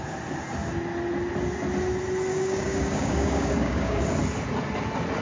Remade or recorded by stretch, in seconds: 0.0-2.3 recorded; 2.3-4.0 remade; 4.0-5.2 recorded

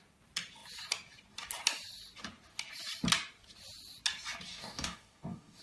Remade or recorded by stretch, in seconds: 0.0-4.5 recorded; 4.5-5.6 remade